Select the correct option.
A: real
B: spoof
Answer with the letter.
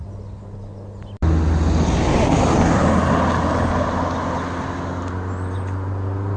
A